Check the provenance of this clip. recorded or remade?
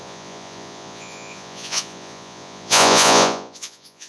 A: remade